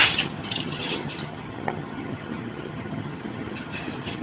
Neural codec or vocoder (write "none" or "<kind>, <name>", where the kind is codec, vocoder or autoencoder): vocoder, HiFi-GAN